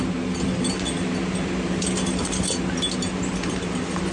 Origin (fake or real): real